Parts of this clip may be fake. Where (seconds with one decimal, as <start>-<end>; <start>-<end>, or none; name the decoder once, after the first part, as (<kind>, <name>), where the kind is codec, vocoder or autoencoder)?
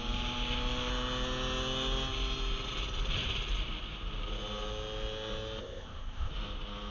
5.6-6.3 (codec, ZipCodec)